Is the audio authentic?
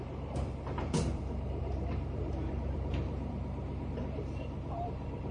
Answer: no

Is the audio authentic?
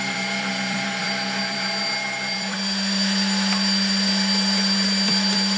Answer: no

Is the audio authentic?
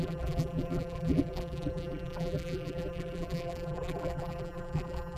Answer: no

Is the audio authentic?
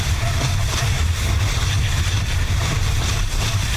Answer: no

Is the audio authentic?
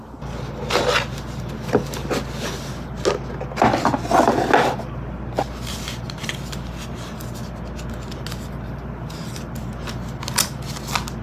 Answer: yes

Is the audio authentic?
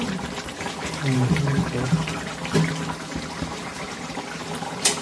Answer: no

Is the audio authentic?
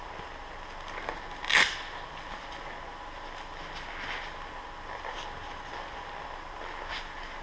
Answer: yes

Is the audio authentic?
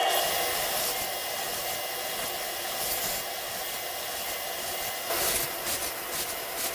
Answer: yes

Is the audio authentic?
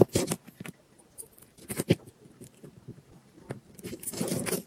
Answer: no